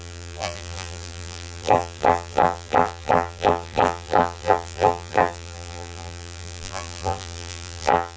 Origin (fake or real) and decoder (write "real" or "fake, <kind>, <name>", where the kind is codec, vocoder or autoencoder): fake, vocoder, BigVGAN v2